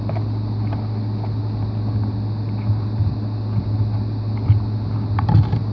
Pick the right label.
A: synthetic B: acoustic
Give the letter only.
B